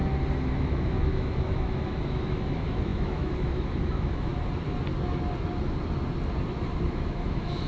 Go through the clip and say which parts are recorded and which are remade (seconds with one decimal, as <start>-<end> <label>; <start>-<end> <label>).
0.0-0.6 recorded; 0.6-4.3 remade; 4.3-6.9 recorded; 6.9-7.7 remade